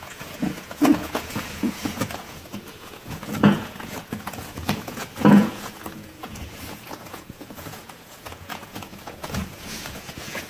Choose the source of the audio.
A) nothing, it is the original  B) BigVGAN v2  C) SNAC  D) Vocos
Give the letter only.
D